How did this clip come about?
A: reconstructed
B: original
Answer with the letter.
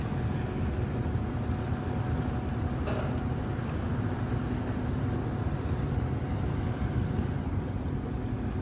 B